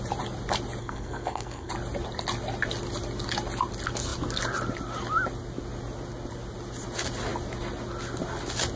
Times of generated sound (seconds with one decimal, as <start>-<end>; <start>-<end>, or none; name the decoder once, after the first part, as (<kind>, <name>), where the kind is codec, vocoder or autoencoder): 0.8-1.7 (codec, SNAC)